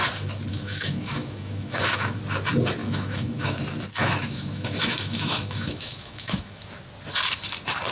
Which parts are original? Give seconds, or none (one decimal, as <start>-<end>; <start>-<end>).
0.0-0.5; 2.2-2.8; 3.6-4.0; 6.6-7.9